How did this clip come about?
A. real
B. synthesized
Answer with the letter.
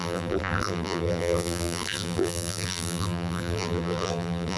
B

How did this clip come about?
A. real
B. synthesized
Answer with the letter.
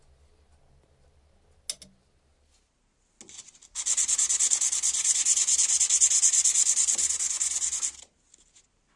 A